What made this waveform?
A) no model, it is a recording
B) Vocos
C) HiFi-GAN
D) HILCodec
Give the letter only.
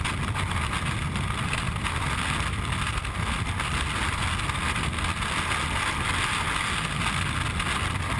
A